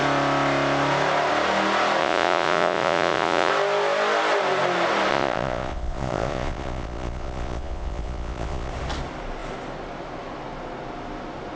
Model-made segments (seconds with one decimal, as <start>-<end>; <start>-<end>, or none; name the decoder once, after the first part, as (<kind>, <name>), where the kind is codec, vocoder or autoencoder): 2.0-3.5 (vocoder, Vocos); 5.1-8.7